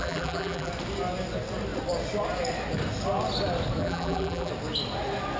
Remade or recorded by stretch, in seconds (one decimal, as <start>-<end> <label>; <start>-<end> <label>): 0.0-0.7 remade; 0.7-3.8 recorded; 3.8-4.5 remade; 4.5-5.4 recorded